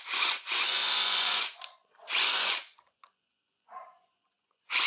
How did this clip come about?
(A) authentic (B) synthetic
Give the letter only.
B